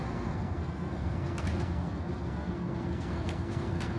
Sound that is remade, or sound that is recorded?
remade